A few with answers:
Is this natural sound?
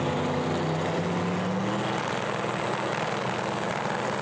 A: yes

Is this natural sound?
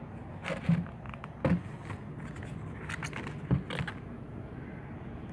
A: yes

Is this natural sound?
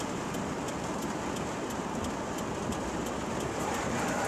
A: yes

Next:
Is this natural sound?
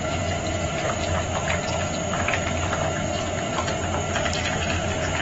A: yes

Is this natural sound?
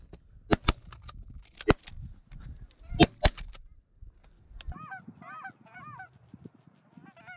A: yes